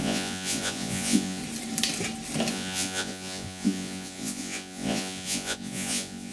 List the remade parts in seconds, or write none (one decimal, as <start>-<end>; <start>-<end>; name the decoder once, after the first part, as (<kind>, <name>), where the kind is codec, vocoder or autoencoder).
0.0-1.4 (vocoder, Vocos); 2.5-6.3